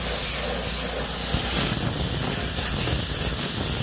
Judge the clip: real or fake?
real